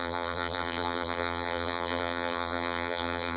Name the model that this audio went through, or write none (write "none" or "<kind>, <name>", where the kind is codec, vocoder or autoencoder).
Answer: vocoder, BigVGAN v2